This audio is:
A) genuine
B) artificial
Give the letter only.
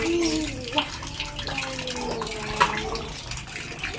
A